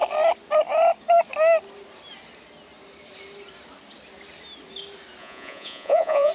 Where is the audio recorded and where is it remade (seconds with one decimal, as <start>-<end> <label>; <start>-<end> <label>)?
0.0-5.2 recorded; 5.2-6.3 remade